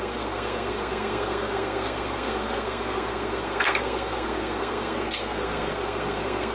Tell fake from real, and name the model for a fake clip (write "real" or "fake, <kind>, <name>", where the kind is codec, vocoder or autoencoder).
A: fake, codec, SNAC